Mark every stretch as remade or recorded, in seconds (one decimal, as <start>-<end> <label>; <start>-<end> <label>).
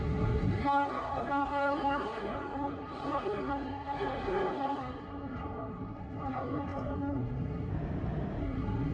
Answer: 0.0-7.7 remade; 7.7-8.4 recorded; 8.4-8.9 remade